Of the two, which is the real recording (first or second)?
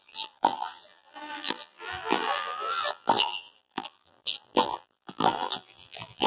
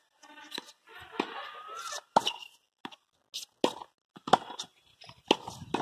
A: second